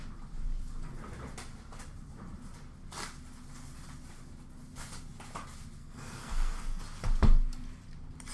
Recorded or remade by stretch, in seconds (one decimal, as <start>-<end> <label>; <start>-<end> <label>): 0.0-5.8 recorded; 5.8-6.8 remade; 6.8-8.3 recorded